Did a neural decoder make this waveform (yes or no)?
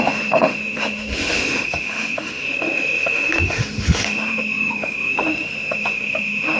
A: yes